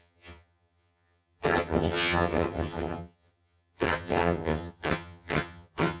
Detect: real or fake fake